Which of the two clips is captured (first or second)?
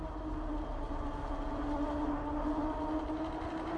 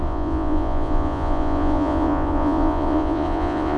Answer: first